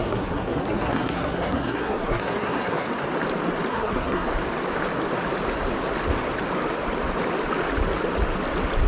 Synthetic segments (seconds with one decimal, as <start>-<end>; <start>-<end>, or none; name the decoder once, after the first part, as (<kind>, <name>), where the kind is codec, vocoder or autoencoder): 0.0-2.9 (codec, SNAC); 3.7-4.3